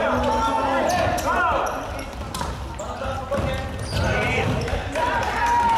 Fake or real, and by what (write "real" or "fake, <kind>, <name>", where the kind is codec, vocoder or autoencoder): real